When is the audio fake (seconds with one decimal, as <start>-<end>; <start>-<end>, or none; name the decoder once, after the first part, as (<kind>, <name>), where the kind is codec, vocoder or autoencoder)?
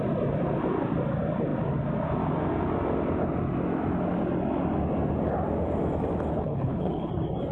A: 6.3-7.1 (codec, HILCodec)